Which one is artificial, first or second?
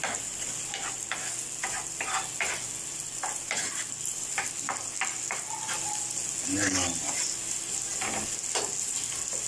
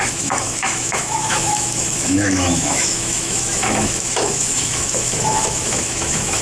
second